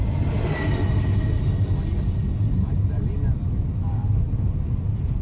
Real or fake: real